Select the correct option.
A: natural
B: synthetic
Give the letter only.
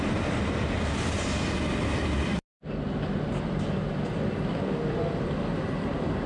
A